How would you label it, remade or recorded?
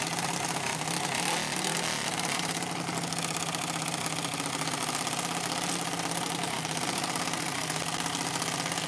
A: recorded